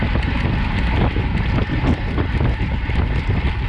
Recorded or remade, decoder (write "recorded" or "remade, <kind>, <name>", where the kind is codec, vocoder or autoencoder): recorded